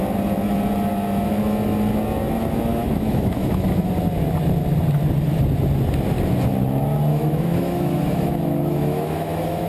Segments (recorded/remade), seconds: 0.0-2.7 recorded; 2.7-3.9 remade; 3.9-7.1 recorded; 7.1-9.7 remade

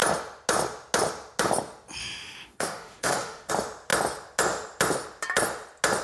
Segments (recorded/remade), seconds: 0.0-2.0 recorded; 2.0-3.5 remade; 3.5-6.0 recorded

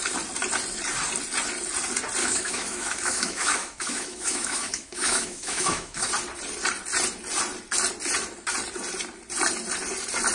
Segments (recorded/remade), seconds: 0.0-2.2 recorded; 2.2-6.1 remade; 6.1-10.3 recorded

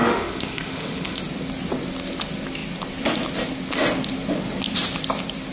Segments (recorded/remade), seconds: 0.0-1.2 remade; 1.2-5.5 recorded